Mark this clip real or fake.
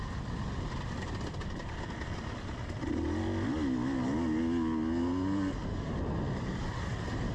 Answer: real